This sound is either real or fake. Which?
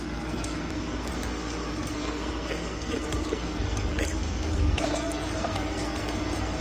fake